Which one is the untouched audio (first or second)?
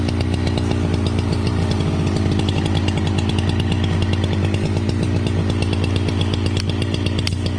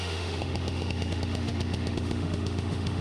first